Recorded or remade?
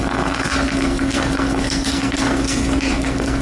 remade